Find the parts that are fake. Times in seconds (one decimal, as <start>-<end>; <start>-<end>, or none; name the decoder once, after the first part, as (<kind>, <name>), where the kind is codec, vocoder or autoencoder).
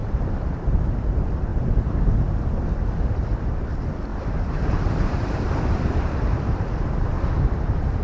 0.0-1.0 (vocoder, BigVGAN v2); 4.1-6.0